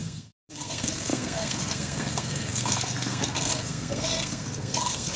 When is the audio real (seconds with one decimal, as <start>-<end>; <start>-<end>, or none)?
none